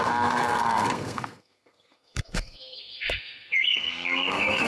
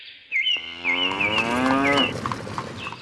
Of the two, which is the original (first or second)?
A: second